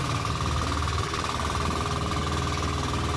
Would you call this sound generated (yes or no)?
no